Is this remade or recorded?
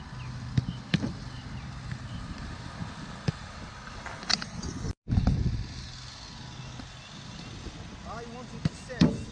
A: recorded